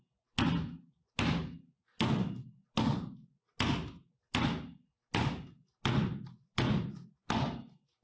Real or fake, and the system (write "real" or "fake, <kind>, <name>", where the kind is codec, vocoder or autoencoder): real